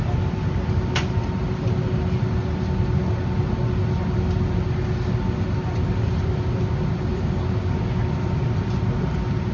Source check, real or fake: real